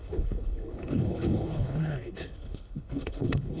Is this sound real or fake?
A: fake